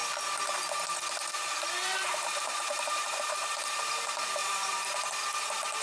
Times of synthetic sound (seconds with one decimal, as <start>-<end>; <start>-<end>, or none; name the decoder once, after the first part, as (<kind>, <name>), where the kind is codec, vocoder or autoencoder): 2.1-3.9 (vocoder, BigVGAN v2); 4.4-5.1